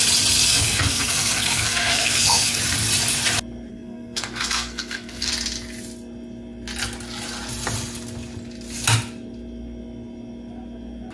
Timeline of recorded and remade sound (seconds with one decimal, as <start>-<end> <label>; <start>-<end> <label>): 0.0-0.5 recorded; 0.5-2.6 remade; 2.6-3.7 recorded; 3.7-5.3 remade; 5.3-11.1 recorded